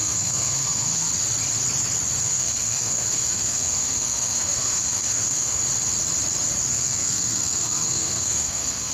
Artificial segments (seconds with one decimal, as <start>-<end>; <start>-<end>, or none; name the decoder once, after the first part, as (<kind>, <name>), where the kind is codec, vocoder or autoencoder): 0.0-1.1 (codec, SNAC); 2.2-5.6; 6.7-8.9